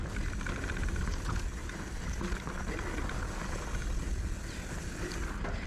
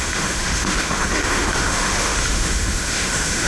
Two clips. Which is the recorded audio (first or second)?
first